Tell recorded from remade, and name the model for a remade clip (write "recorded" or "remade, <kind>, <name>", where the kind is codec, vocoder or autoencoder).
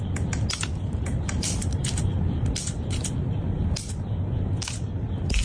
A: recorded